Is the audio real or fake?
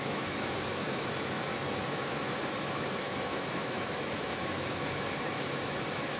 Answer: fake